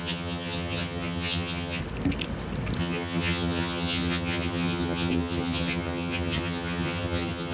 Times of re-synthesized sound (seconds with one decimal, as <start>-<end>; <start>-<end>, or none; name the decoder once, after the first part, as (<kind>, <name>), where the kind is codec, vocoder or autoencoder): 0.0-1.8 (vocoder, HiFi-GAN); 2.8-7.5